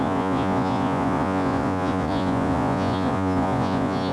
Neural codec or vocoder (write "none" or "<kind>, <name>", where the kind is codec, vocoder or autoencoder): vocoder, Vocos